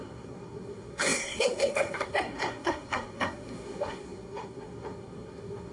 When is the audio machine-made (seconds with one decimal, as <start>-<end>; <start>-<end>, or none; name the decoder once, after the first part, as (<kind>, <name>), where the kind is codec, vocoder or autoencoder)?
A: 0.0-5.7 (codec, SNAC)